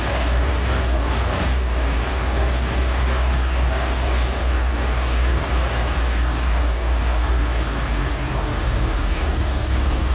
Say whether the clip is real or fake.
fake